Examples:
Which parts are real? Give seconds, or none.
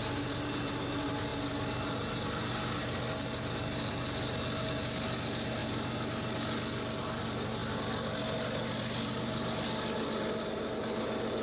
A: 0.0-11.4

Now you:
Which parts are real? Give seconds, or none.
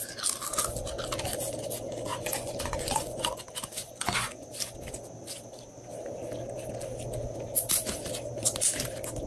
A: 0.0-2.1; 3.4-3.8; 4.5-9.3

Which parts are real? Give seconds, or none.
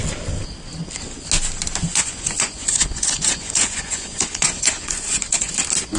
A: 0.0-1.9; 5.5-6.0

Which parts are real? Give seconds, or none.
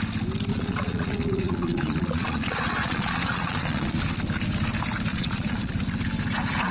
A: 0.0-0.5; 4.0-5.1; 5.7-6.7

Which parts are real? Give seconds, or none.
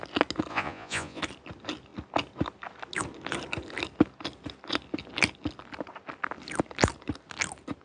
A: 0.0-0.5; 1.2-7.8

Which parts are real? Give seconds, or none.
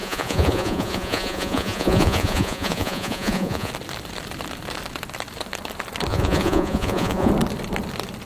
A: 3.7-6.1; 7.3-8.3